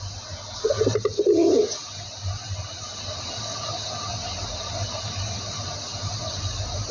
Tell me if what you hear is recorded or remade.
recorded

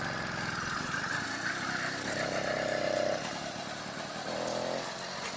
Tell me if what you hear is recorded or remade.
recorded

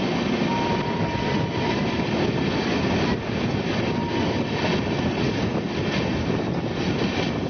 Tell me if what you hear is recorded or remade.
recorded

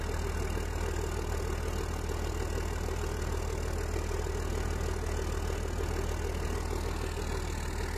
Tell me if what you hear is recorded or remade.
recorded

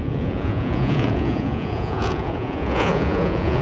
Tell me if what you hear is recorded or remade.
remade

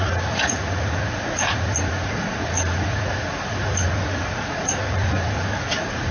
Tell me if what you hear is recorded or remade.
remade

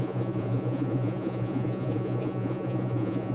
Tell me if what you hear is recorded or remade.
remade